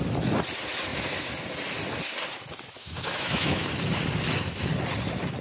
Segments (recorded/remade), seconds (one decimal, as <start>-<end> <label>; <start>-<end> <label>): 0.0-2.8 recorded; 2.8-3.7 remade; 3.7-5.4 recorded

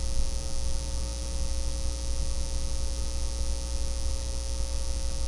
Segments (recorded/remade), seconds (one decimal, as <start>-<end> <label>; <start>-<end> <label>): 0.0-5.3 recorded

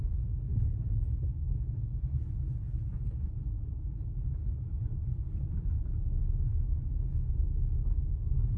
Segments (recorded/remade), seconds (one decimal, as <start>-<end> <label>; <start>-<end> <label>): 0.0-6.2 recorded; 6.2-8.1 remade; 8.1-8.6 recorded

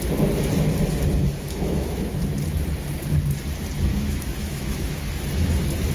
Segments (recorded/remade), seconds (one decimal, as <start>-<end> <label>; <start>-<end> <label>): 0.0-1.2 recorded; 1.2-2.2 remade; 2.2-3.9 recorded; 3.9-5.1 remade; 5.1-5.9 recorded

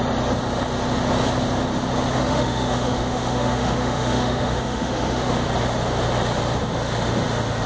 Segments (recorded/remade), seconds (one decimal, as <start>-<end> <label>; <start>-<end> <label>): 0.0-2.1 recorded; 2.1-5.3 remade; 5.3-7.7 recorded

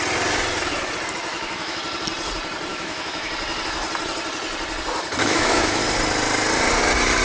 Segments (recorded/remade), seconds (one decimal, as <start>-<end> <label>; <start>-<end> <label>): 0.0-1.3 recorded; 1.3-1.8 remade; 1.8-2.7 recorded; 2.7-3.3 remade; 3.3-5.2 recorded; 5.2-5.8 remade; 5.8-7.2 recorded

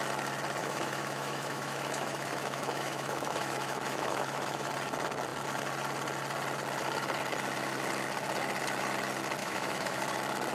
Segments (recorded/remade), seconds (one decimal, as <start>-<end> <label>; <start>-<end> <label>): 0.0-0.6 recorded; 0.6-4.7 remade; 4.7-9.4 recorded; 9.4-10.0 remade; 10.0-10.5 recorded